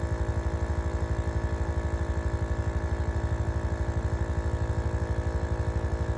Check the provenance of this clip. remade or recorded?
recorded